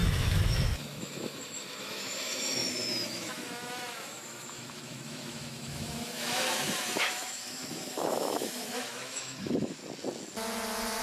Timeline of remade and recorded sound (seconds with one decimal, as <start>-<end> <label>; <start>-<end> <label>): 0.0-9.8 remade; 9.8-11.0 recorded